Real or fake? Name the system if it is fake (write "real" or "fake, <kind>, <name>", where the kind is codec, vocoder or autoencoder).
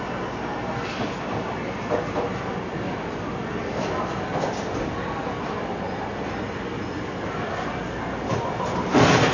real